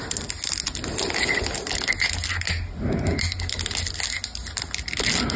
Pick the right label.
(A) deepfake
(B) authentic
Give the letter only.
B